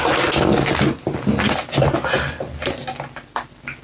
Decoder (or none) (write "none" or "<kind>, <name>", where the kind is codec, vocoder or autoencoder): none